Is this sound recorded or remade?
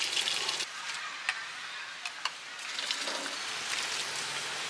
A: recorded